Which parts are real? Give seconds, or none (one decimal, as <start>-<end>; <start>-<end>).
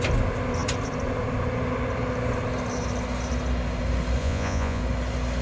0.0-4.2; 4.8-5.4